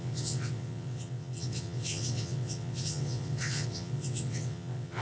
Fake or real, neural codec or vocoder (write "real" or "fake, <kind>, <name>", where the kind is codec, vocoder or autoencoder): fake, vocoder, WaveNeXt